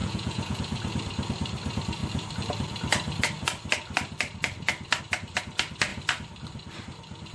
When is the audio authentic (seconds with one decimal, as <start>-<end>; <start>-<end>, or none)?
0.6-7.3